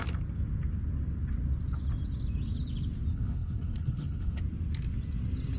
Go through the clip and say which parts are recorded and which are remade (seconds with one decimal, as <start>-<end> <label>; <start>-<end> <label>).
0.0-3.1 recorded; 3.1-4.4 remade; 4.4-5.6 recorded